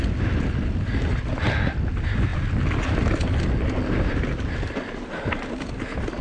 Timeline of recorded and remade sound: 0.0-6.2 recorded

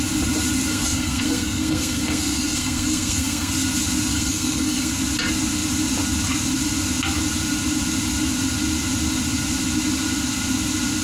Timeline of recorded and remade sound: 0.0-0.7 recorded; 0.7-3.5 remade; 3.5-4.1 recorded; 4.1-4.9 remade; 4.9-11.0 recorded

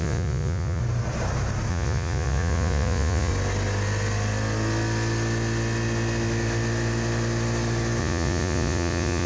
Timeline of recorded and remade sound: 0.0-0.8 remade; 0.8-1.7 recorded; 1.7-3.3 remade; 3.3-8.0 recorded; 8.0-9.3 remade

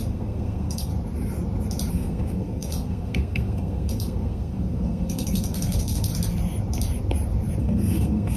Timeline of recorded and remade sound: 0.0-0.9 remade; 0.9-1.9 recorded; 1.9-6.1 remade; 6.1-7.6 recorded; 7.6-8.4 remade

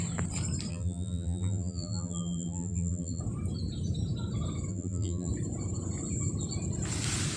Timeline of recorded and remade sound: 0.0-0.7 recorded; 0.7-3.2 remade; 3.2-4.7 recorded; 4.7-5.3 remade; 5.3-7.4 recorded

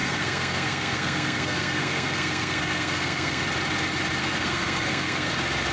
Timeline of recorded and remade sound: 0.0-3.4 remade; 3.4-4.2 recorded; 4.2-5.3 remade; 5.3-5.7 recorded

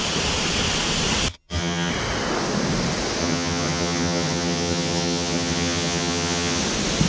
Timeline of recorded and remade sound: 0.0-1.3 recorded; 1.3-1.9 remade; 1.9-3.2 recorded; 3.2-6.6 remade; 6.6-7.1 recorded